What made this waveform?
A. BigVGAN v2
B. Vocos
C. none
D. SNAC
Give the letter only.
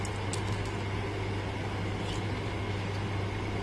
C